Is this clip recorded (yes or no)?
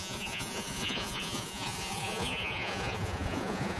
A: no